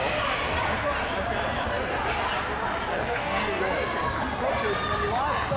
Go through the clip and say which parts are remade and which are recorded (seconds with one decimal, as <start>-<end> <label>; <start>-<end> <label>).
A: 0.0-2.9 recorded; 2.9-3.6 remade; 3.6-5.6 recorded